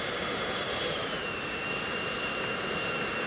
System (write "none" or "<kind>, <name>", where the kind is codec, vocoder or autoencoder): vocoder, BigVGAN v2